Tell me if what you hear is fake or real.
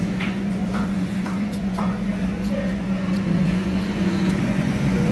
fake